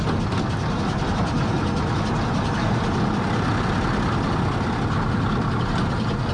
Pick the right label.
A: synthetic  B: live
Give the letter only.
B